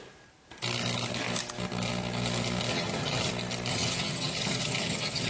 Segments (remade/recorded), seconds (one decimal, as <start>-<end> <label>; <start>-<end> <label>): 0.0-2.7 recorded; 2.7-3.3 remade; 3.3-3.7 recorded; 3.7-5.3 remade